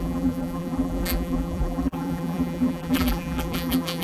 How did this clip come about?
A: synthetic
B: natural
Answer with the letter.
A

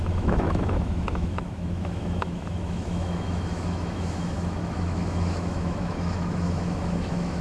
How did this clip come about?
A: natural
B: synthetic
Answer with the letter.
B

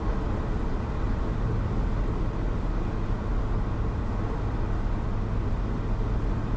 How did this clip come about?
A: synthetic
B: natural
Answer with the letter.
B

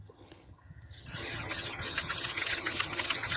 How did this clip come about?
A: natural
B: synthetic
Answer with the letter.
B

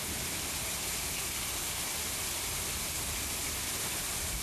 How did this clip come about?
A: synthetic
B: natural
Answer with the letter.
B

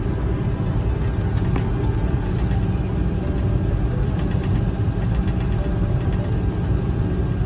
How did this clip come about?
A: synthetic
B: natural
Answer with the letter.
B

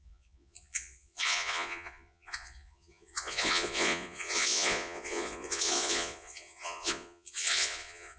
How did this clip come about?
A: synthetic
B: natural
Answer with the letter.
A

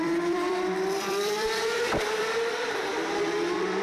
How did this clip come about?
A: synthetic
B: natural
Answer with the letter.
A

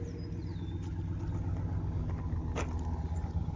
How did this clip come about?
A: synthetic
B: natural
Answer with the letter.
B